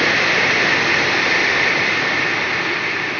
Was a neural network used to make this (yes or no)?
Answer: no